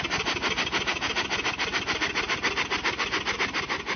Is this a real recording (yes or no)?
yes